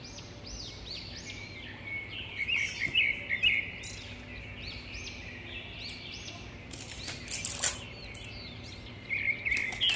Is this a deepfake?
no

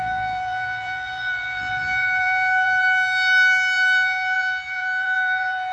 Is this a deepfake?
yes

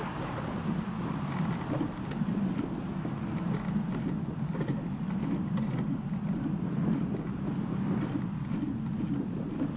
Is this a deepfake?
no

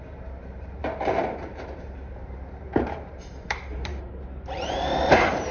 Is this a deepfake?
yes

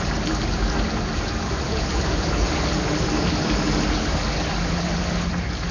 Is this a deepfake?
no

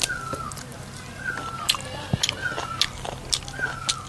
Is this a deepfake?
no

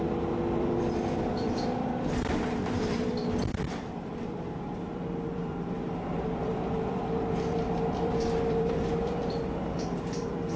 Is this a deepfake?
yes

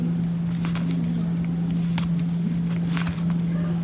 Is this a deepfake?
no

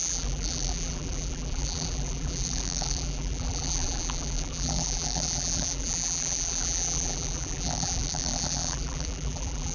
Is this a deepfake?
yes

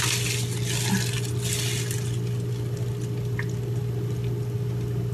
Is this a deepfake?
no